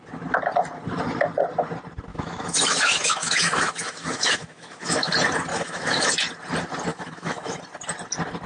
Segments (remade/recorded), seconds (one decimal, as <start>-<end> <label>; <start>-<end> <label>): 0.0-2.1 recorded; 2.1-5.1 remade; 5.1-5.5 recorded; 5.5-6.1 remade; 6.1-6.9 recorded; 6.9-7.6 remade; 7.6-8.5 recorded

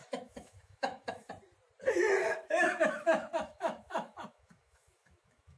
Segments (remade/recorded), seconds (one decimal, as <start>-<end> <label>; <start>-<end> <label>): 0.0-1.3 remade; 1.3-2.2 recorded; 2.2-5.6 remade

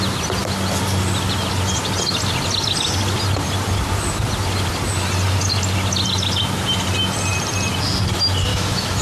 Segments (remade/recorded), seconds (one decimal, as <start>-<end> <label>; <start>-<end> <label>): 0.0-8.5 recorded; 8.5-9.0 remade

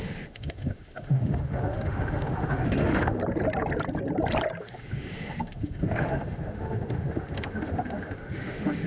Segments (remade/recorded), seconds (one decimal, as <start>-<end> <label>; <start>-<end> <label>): 0.0-3.2 remade; 3.2-4.6 recorded; 4.6-8.9 remade

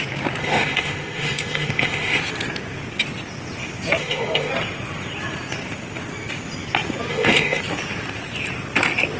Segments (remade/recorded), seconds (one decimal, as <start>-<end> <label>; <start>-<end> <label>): 0.0-0.4 recorded; 0.4-2.2 remade; 2.2-4.0 recorded; 4.0-4.5 remade; 4.5-7.1 recorded; 7.1-7.6 remade; 7.6-9.2 recorded

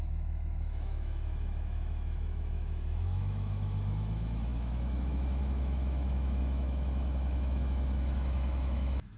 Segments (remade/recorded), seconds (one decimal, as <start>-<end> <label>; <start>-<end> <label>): 0.0-9.2 remade

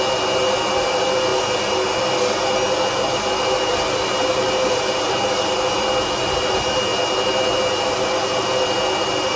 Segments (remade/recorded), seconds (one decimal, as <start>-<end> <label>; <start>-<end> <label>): 0.0-9.4 recorded